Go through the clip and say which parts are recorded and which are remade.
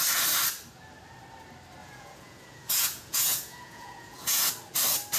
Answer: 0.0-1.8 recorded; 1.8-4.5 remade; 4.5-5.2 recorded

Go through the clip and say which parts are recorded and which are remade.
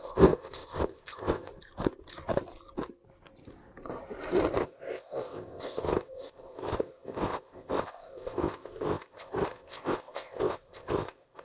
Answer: 0.0-1.5 remade; 1.5-4.6 recorded; 4.6-11.4 remade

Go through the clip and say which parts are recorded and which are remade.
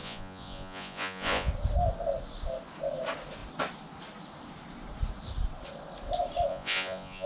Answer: 0.0-1.5 remade; 1.5-6.5 recorded; 6.5-7.3 remade